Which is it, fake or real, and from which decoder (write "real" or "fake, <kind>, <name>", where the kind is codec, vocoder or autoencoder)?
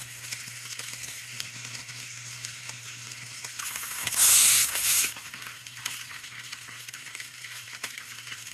fake, codec, SNAC